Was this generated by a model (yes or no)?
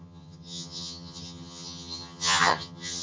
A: yes